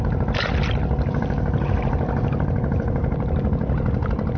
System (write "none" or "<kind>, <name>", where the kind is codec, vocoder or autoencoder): none